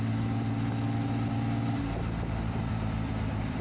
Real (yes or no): yes